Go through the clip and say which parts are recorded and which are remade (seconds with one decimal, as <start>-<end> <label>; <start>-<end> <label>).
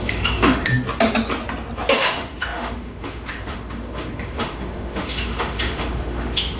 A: 0.0-0.7 remade; 0.7-1.9 recorded; 1.9-6.6 remade